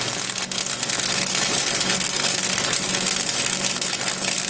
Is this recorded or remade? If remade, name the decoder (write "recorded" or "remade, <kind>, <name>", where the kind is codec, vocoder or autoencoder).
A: recorded